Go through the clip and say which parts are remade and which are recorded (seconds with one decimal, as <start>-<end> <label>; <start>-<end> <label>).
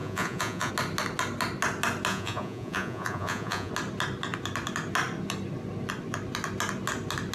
0.0-0.7 remade; 0.7-2.1 recorded; 2.1-3.7 remade; 3.7-7.3 recorded